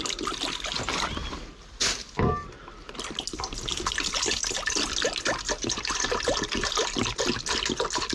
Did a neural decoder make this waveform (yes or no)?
no